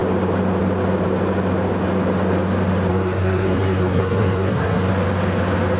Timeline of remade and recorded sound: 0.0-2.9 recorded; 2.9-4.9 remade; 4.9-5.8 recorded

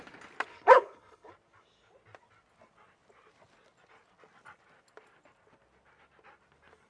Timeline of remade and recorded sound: 0.0-0.5 recorded; 0.5-1.3 remade; 1.3-6.9 recorded

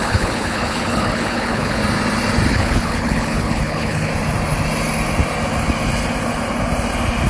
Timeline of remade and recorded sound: 0.0-1.8 remade; 1.8-2.5 recorded; 2.5-4.1 remade; 4.1-7.3 recorded

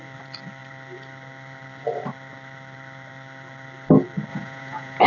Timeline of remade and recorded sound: 0.0-4.3 recorded; 4.3-5.1 remade

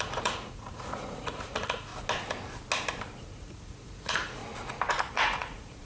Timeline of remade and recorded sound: 0.0-1.9 remade; 1.9-3.2 recorded; 3.2-4.4 remade; 4.4-5.1 recorded; 5.1-5.9 remade

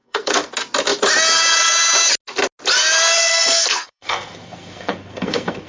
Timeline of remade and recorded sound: 0.0-0.5 remade; 0.5-3.2 recorded; 3.2-5.7 remade

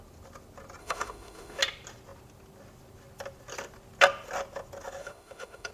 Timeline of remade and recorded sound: 0.0-0.8 recorded; 0.8-1.6 remade; 1.6-5.0 recorded; 5.0-5.7 remade